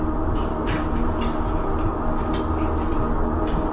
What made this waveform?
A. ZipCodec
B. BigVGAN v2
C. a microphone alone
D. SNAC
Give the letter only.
C